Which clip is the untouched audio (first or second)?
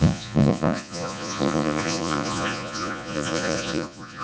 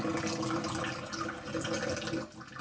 second